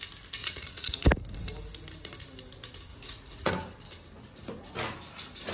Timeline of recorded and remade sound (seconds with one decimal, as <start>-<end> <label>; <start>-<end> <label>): 0.0-0.4 recorded; 0.4-1.1 remade; 1.1-2.9 recorded; 2.9-3.5 remade; 3.5-5.5 recorded